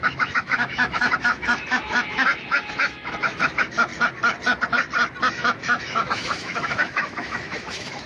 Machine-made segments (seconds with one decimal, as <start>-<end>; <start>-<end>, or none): 0.0-3.9; 5.3-8.1